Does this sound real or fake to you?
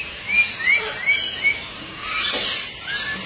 real